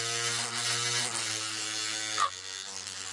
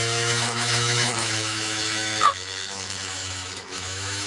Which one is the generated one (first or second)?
second